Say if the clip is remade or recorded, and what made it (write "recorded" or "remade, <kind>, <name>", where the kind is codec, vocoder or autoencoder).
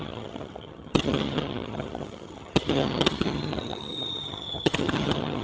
remade, vocoder, HiFi-GAN